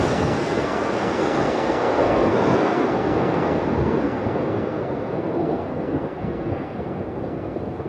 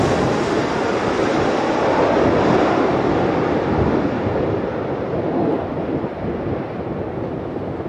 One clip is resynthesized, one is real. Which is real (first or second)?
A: second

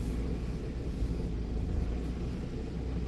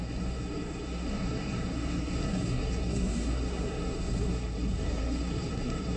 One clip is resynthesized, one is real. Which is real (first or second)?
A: first